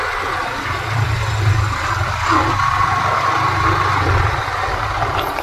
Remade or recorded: recorded